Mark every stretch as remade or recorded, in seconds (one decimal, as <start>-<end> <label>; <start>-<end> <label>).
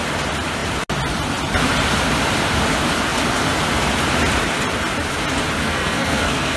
0.0-5.6 recorded; 5.6-6.6 remade